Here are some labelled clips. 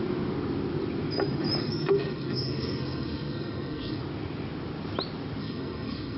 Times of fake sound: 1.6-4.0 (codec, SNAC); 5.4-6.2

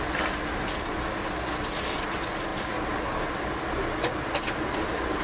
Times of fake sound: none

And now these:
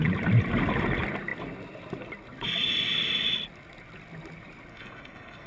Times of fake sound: 4.7-5.5 (codec, SNAC)